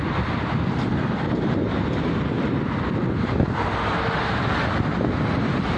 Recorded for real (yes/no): yes